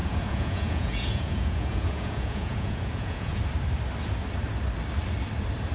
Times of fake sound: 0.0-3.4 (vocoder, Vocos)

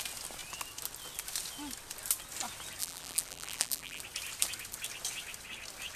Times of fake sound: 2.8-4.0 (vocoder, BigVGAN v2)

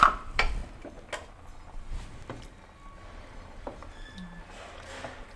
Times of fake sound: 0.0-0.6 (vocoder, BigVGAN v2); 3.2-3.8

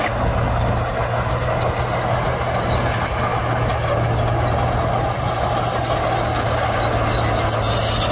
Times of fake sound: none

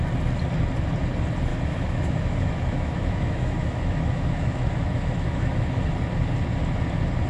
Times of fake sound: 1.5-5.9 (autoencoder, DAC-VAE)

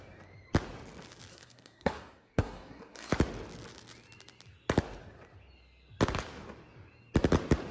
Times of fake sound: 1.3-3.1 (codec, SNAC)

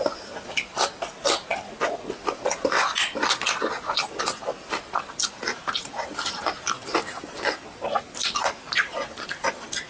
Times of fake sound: none

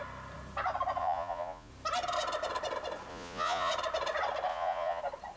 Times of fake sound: 1.0-1.7 (vocoder, Vocos); 3.1-3.7; 4.5-5.0